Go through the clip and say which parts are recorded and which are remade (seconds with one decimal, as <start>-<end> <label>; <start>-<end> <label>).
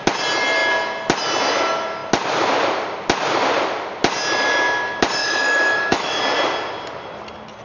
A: 0.0-5.2 recorded; 5.2-6.2 remade; 6.2-7.6 recorded